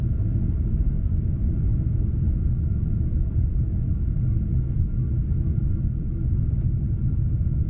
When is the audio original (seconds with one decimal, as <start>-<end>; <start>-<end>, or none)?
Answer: 0.0-7.7